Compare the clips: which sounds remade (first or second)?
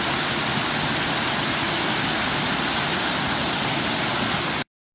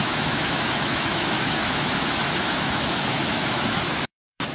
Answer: second